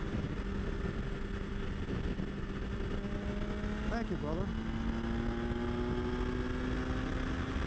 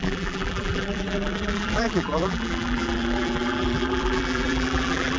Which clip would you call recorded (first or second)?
first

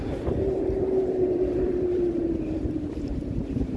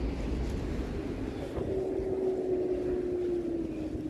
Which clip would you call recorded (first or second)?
second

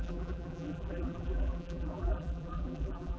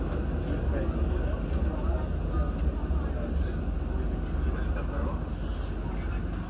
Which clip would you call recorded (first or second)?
second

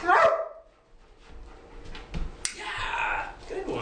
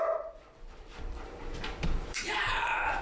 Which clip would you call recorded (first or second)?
first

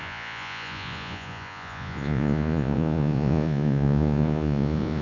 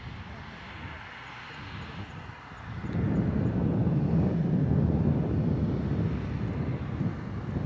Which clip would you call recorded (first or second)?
second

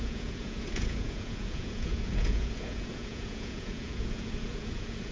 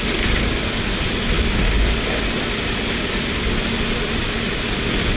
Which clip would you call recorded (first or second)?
second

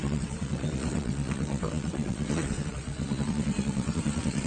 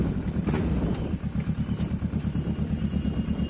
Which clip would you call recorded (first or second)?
second